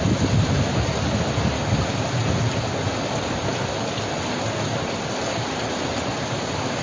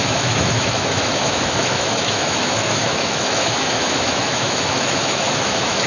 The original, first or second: first